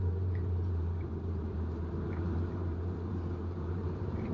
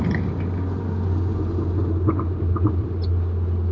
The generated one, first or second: first